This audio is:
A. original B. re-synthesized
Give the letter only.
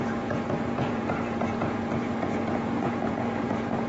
B